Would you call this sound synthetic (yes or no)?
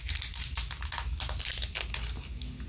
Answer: no